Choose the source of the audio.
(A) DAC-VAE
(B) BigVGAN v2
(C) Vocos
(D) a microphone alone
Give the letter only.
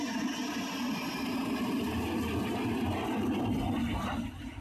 D